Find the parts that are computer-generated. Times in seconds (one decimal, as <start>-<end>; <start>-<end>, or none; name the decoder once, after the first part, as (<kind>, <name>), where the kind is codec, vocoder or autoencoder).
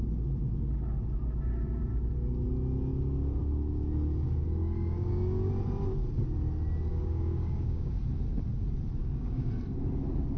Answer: 4.6-5.5 (codec, DAC); 6.9-8.0; 9.0-9.5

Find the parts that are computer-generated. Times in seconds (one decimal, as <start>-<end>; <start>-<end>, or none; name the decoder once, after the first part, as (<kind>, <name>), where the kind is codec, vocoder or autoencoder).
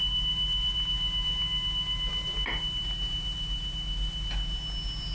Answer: none